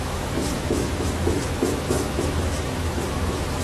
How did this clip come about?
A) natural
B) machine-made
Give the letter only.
B